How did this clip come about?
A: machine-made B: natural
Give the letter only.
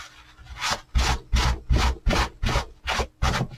B